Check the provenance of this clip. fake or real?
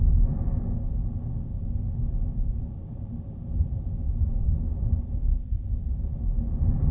real